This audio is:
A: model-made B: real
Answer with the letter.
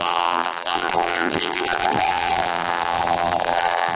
A